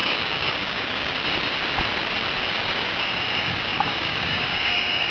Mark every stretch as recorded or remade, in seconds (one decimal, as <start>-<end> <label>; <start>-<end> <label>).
0.0-1.1 remade; 1.1-3.7 recorded; 3.7-5.1 remade